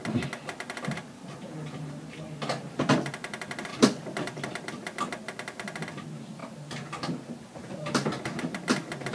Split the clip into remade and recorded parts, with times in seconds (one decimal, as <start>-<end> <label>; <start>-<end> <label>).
0.0-3.7 recorded; 3.7-5.0 remade; 5.0-9.1 recorded